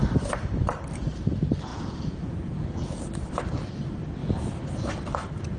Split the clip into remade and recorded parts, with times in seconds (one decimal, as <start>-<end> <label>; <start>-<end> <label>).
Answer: 0.0-1.7 recorded; 1.7-3.0 remade; 3.0-4.2 recorded; 4.2-4.9 remade; 4.9-5.6 recorded